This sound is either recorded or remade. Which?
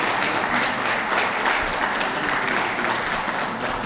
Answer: recorded